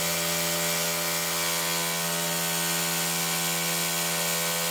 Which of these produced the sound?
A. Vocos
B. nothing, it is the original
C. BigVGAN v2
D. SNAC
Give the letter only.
B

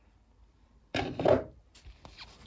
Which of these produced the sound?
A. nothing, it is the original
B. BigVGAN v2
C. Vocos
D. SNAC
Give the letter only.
B